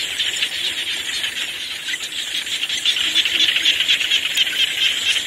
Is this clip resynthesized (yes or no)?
no